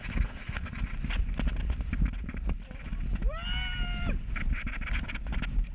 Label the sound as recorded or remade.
recorded